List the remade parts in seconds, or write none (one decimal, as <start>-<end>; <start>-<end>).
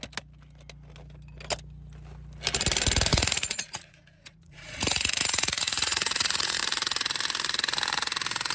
3.1-6.6